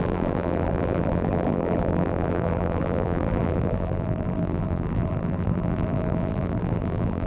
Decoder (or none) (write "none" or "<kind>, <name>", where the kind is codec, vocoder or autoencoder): vocoder, BigVGAN v2